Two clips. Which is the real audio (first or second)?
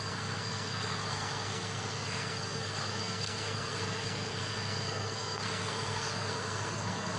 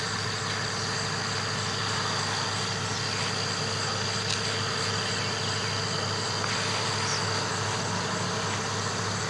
second